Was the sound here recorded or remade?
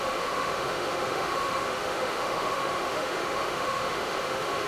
remade